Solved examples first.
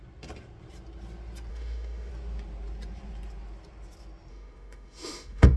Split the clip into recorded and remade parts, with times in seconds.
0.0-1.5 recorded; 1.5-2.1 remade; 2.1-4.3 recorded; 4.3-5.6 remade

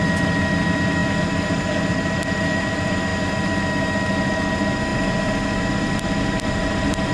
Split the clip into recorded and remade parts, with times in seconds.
0.0-7.1 recorded

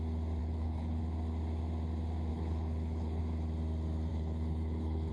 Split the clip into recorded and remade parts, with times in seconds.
0.0-0.4 recorded; 0.4-1.0 remade; 1.0-2.3 recorded; 2.3-3.2 remade; 3.2-4.1 recorded; 4.1-5.1 remade

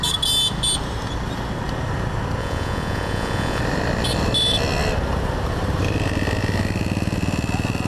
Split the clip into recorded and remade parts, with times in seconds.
0.0-2.4 recorded; 2.4-3.6 remade; 3.6-7.9 recorded